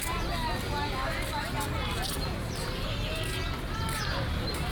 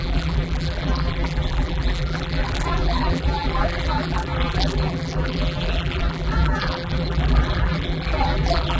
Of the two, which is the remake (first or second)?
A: second